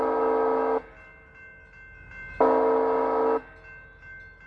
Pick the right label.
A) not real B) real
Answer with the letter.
B